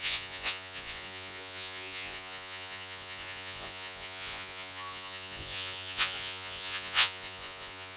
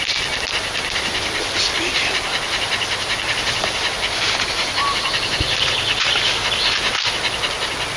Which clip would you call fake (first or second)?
first